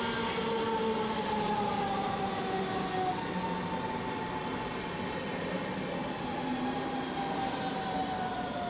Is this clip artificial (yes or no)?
no